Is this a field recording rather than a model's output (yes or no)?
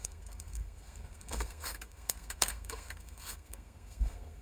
no